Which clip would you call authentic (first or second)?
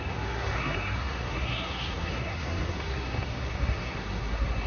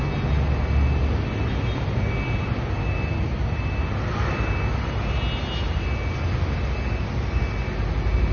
second